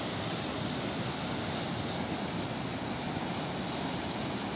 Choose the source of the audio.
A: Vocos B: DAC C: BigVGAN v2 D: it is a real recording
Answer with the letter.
D